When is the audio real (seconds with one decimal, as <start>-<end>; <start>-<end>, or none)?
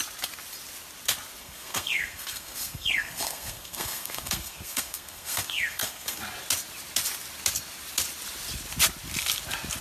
0.0-1.4; 6.2-9.8